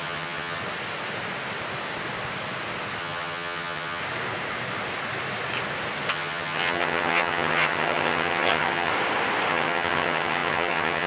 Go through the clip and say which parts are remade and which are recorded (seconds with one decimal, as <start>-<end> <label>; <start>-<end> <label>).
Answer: 0.0-0.6 remade; 0.6-3.0 recorded; 3.0-4.0 remade; 4.0-6.1 recorded; 6.1-8.9 remade; 8.9-9.5 recorded; 9.5-11.1 remade